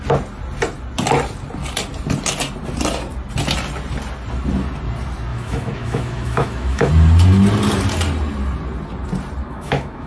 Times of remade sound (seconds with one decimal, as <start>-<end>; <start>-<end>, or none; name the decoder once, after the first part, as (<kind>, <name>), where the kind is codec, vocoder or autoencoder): 5.3-6.9 (autoencoder, DAC-VAE); 9.4-10.1